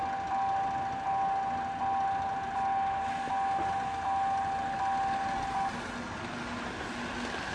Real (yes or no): yes